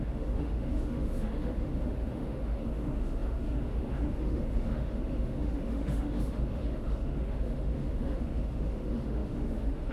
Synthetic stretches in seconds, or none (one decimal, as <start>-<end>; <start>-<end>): 0.0-9.9